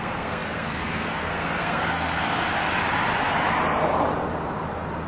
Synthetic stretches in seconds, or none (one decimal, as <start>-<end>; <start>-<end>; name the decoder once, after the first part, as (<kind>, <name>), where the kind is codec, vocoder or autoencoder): 0.0-2.4 (codec, SNAC)